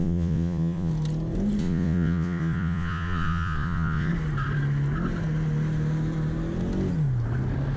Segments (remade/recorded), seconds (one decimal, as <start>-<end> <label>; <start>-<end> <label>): 0.0-0.9 remade; 0.9-1.6 recorded; 1.6-4.1 remade; 4.1-7.8 recorded